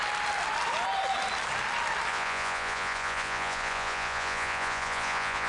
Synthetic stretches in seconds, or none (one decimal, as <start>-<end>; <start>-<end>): 2.1-5.5